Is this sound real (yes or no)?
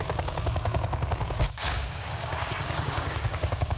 no